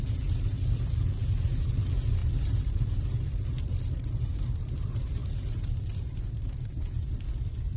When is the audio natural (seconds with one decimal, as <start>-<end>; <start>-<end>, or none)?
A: 0.0-2.2; 2.9-7.8

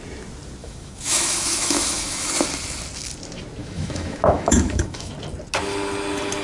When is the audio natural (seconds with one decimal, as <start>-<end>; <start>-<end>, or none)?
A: 0.0-0.6; 2.3-3.6; 5.1-6.4